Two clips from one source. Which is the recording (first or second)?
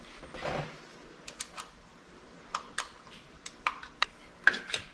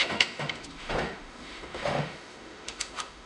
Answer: first